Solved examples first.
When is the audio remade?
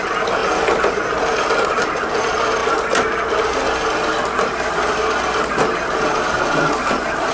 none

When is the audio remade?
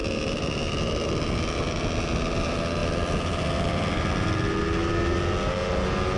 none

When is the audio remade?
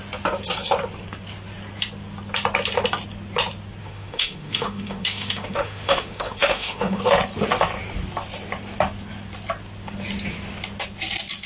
3.8-7.0 (autoencoder, DAC-VAE)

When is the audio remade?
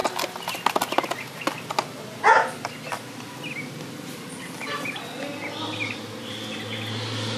none